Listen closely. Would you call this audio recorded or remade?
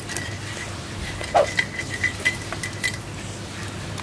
recorded